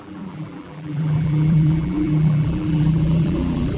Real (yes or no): no